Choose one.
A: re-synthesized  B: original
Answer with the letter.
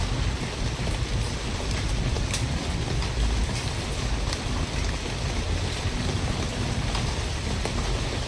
B